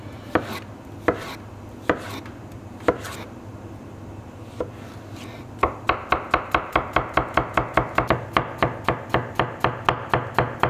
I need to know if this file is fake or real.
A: real